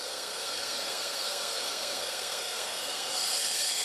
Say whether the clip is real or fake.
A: fake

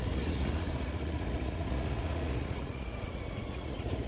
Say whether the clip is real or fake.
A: fake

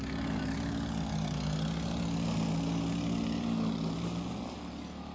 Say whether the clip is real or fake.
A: real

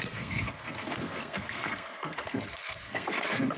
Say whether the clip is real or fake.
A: fake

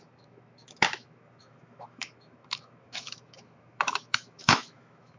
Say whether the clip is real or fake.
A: fake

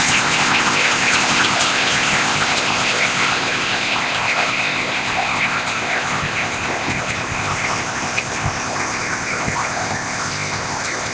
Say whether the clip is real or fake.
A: fake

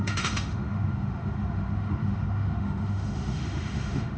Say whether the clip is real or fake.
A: fake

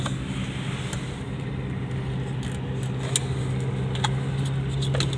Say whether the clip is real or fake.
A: real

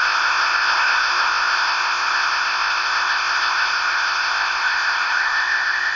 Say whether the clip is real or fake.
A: fake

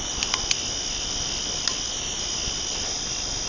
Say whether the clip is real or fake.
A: real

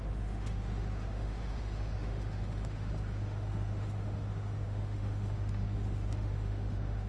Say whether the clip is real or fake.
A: fake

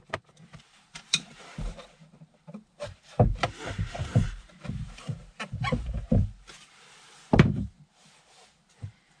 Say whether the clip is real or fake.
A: fake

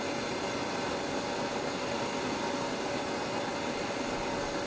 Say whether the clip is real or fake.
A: real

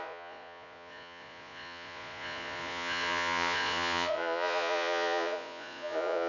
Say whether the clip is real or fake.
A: fake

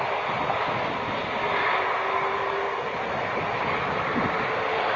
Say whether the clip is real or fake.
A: real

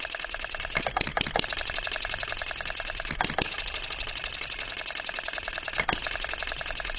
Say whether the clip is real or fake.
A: real